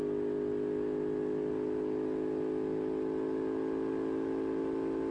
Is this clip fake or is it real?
real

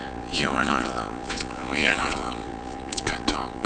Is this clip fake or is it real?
fake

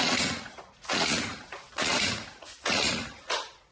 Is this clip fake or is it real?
fake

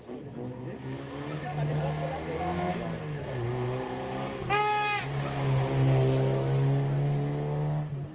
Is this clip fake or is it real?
real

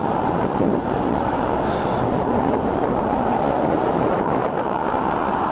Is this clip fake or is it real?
fake